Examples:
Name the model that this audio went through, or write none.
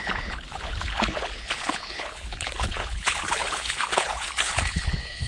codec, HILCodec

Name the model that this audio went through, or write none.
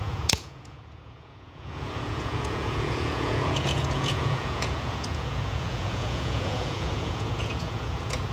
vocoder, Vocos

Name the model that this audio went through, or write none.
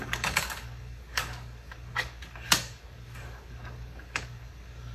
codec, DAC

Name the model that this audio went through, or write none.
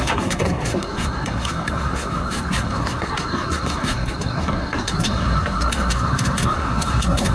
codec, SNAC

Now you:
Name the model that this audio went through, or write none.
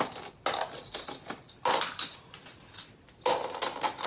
none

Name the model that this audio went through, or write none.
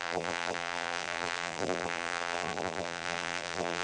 vocoder, BigVGAN v2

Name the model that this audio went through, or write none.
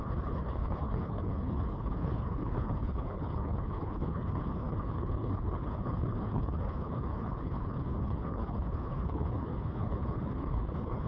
codec, HILCodec